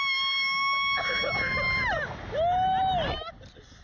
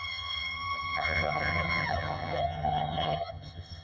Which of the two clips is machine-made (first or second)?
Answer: second